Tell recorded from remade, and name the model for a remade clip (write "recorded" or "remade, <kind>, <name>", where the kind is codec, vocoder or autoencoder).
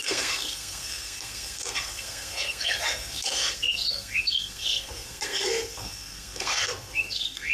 remade, codec, SNAC